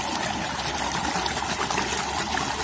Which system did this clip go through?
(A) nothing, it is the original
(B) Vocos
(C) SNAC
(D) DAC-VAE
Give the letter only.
A